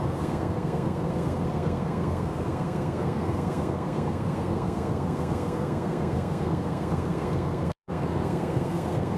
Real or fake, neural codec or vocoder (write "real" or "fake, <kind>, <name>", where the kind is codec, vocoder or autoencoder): fake, codec, SNAC